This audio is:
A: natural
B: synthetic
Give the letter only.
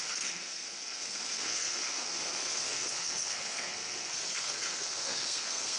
B